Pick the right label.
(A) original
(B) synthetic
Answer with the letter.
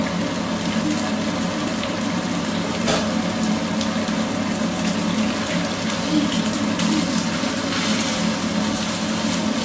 A